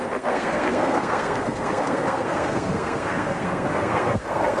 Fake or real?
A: fake